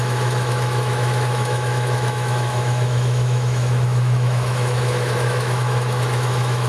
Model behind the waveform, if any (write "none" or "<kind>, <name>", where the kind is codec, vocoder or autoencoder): autoencoder, DAC-VAE